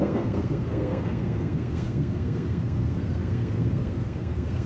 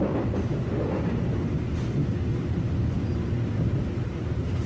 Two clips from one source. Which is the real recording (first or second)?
second